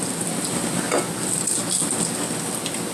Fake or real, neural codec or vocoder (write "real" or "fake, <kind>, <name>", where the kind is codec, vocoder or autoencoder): real